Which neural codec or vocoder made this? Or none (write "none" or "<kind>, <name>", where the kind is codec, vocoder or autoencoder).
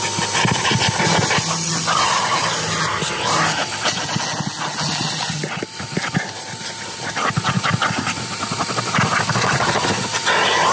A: none